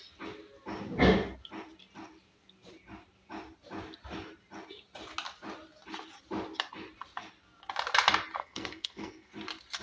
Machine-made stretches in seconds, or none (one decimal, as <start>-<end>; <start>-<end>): 8.4-9.3